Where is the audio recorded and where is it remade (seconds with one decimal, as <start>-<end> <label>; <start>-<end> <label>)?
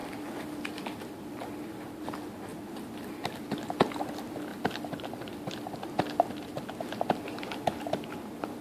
0.0-2.0 remade; 2.0-2.5 recorded; 2.5-3.3 remade; 3.3-4.5 recorded; 4.5-5.8 remade; 5.8-8.6 recorded